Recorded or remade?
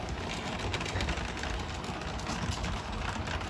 recorded